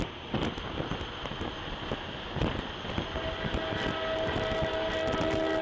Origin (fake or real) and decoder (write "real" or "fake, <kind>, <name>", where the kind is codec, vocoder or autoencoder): real